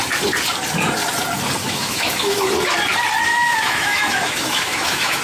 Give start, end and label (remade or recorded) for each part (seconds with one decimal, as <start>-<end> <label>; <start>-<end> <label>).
0.0-1.6 recorded; 1.6-2.5 remade; 2.5-3.3 recorded; 3.3-5.2 remade